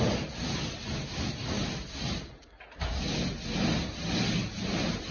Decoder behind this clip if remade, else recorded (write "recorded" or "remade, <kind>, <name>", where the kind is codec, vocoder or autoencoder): recorded